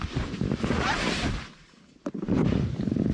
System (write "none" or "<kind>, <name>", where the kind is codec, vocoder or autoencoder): none